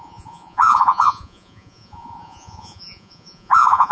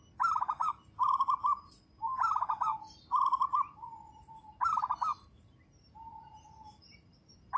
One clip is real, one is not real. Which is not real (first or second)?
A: first